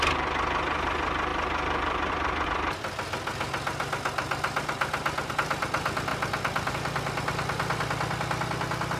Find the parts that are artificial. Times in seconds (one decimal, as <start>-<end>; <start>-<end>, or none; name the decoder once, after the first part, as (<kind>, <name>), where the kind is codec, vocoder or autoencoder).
none